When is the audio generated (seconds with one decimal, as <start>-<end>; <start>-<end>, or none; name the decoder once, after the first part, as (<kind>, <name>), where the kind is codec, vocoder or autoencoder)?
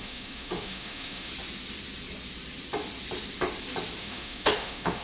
0.0-1.3 (autoencoder, DAC-VAE); 4.0-5.0